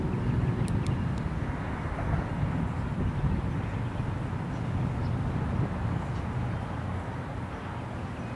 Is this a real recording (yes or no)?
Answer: yes